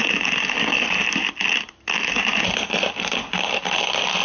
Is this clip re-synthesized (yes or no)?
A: no